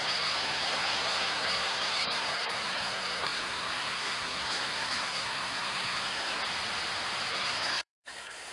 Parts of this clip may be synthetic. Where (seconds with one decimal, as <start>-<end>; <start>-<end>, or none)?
0.0-6.4; 7.3-8.5